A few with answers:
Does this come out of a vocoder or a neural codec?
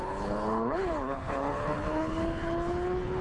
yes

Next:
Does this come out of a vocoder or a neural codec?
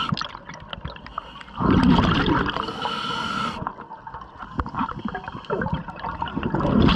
no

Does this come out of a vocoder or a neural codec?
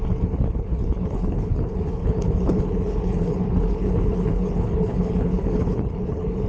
yes